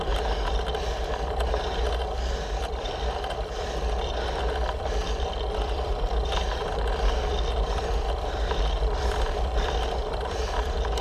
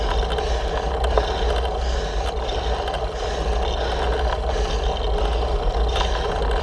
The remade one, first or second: first